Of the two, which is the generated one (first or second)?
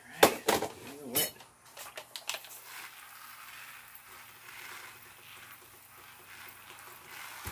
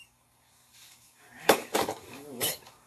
second